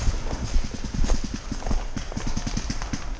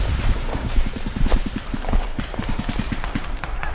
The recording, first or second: first